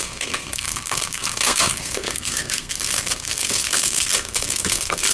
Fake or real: fake